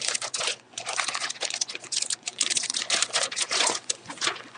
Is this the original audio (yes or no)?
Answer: no